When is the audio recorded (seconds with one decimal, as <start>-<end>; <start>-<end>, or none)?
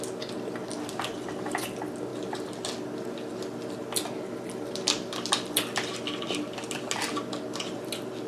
0.0-8.3